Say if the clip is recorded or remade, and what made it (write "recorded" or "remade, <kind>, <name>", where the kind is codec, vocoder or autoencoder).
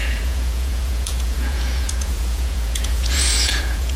remade, vocoder, Vocos